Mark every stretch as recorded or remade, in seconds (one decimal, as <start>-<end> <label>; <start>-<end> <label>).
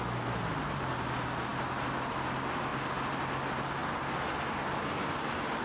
0.0-5.6 recorded